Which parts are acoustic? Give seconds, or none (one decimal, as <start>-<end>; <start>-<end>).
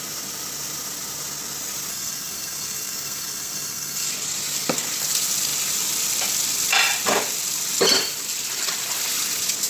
0.0-1.9; 4.1-9.7